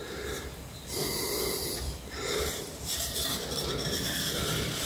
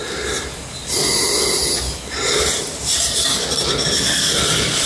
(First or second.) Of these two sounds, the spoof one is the first